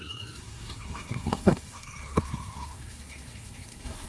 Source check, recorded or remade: remade